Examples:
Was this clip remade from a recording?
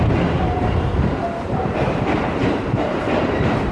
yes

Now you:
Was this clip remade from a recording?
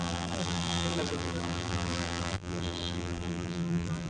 yes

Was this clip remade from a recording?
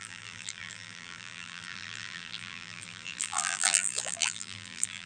yes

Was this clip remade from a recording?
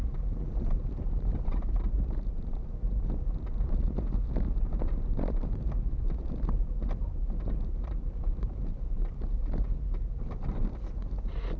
yes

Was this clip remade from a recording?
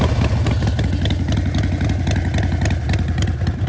no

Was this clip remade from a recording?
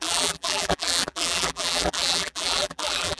yes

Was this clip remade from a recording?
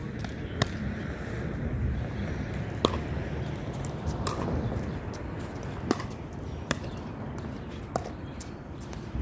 yes